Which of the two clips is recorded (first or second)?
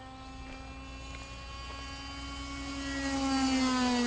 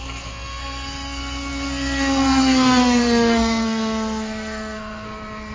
first